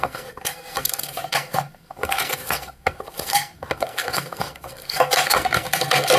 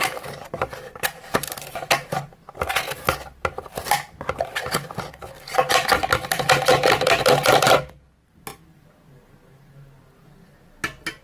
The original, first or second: second